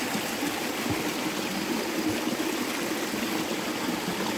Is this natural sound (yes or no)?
yes